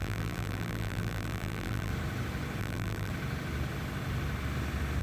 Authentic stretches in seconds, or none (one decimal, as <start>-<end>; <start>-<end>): 1.9-2.6; 3.1-5.0